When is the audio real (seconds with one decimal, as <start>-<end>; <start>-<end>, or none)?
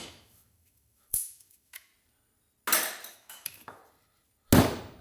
1.9-3.1; 3.8-5.0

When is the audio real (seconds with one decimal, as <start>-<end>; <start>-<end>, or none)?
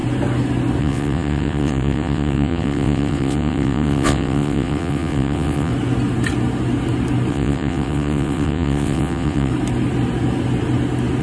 0.0-0.8; 5.7-7.3; 9.5-11.2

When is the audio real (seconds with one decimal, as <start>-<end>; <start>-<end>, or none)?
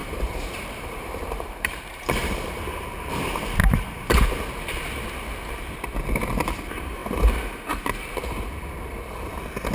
2.6-3.6; 4.2-9.7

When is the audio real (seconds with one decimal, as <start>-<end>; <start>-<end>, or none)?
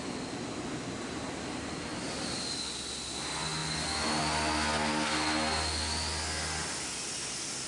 0.0-7.7